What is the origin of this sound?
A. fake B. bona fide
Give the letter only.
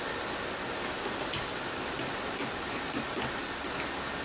B